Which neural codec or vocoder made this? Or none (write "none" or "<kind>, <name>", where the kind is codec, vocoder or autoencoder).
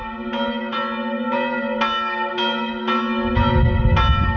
none